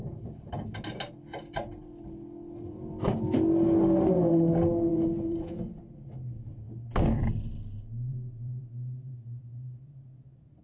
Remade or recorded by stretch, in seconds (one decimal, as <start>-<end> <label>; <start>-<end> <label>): 0.0-0.5 remade; 0.5-4.9 recorded; 4.9-5.8 remade; 5.8-8.1 recorded; 8.1-10.6 remade